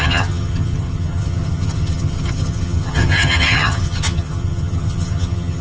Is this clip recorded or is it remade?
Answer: remade